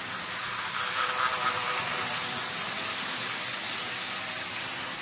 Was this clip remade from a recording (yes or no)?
no